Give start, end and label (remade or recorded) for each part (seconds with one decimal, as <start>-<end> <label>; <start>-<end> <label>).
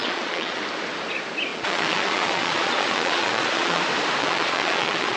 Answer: 0.0-0.6 remade; 0.6-1.5 recorded; 1.5-3.8 remade; 3.8-4.2 recorded; 4.2-5.2 remade